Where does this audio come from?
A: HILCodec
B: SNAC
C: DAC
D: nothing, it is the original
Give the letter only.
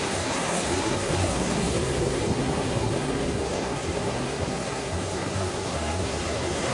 B